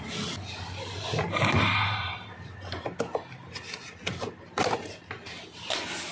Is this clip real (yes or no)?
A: yes